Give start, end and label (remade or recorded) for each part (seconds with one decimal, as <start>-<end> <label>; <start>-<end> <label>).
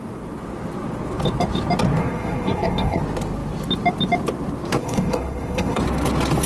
0.0-2.0 recorded; 2.0-3.0 remade; 3.0-4.8 recorded; 4.8-5.8 remade; 5.8-6.5 recorded